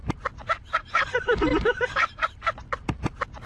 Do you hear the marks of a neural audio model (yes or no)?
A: no